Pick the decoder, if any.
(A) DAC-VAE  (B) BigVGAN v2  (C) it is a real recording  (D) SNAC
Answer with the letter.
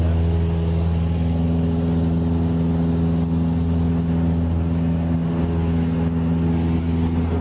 C